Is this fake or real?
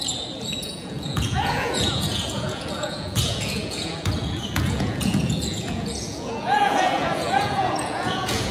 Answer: fake